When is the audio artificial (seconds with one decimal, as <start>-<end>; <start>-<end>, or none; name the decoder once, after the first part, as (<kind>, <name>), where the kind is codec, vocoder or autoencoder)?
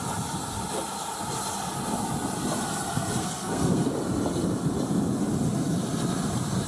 3.2-3.9 (codec, SNAC)